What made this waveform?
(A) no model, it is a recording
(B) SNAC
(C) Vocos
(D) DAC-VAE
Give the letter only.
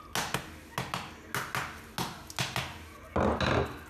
A